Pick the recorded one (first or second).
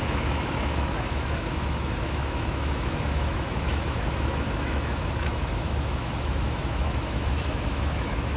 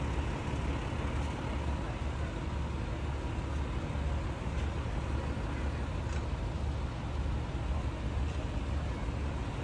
second